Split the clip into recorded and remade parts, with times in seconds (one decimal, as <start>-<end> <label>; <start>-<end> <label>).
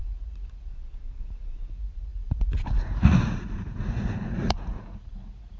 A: 0.0-0.7 remade; 0.7-1.7 recorded; 1.7-5.6 remade